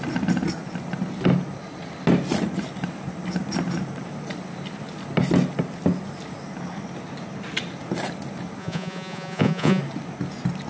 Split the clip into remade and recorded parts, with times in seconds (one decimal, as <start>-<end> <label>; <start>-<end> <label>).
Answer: 0.0-8.6 recorded; 8.6-9.8 remade; 9.8-10.7 recorded